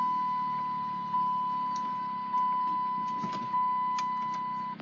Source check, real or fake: real